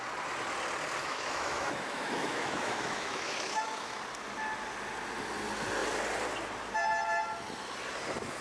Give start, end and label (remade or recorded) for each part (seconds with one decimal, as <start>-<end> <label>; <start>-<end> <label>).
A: 0.0-1.0 recorded; 1.0-4.0 remade; 4.0-8.4 recorded